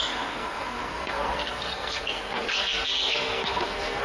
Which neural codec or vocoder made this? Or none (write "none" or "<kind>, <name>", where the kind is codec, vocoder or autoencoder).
codec, SNAC